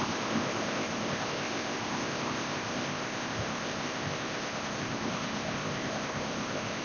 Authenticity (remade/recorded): remade